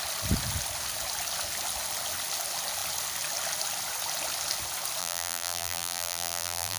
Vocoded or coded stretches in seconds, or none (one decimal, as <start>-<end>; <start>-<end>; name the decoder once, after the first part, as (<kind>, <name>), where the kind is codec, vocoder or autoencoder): 5.0-6.8 (vocoder, BigVGAN v2)